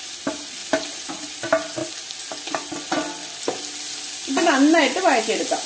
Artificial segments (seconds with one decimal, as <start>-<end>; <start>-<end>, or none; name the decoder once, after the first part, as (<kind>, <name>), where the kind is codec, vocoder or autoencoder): none